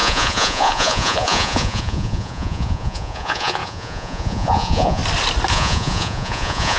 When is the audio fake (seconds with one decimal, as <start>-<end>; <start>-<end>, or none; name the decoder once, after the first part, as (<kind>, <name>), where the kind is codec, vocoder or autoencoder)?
0.0-5.0 (vocoder, Vocos); 5.5-6.8